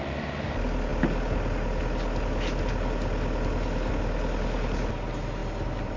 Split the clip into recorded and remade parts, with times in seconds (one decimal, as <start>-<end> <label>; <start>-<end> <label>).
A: 0.0-5.4 recorded; 5.4-6.0 remade